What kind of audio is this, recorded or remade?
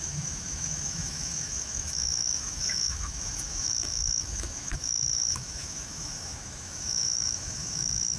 remade